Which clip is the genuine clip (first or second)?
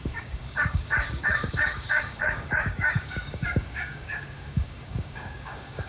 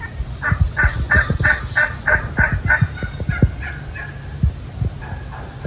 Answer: second